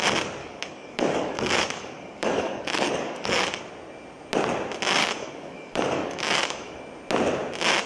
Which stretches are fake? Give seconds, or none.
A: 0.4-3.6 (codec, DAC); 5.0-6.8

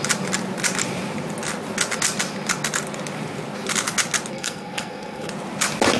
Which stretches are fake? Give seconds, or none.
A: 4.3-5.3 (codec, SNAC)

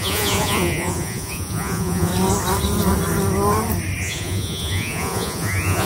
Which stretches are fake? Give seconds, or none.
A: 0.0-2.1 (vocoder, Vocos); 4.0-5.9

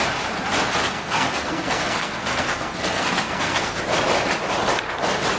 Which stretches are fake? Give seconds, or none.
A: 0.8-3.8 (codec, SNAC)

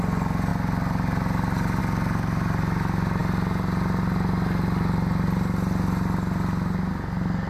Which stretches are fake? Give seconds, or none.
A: none